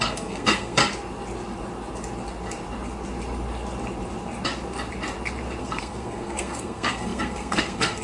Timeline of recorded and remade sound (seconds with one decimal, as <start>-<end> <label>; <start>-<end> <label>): 0.0-0.8 remade; 0.8-5.6 recorded; 5.6-8.0 remade